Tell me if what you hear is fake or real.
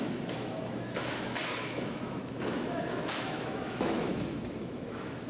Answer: fake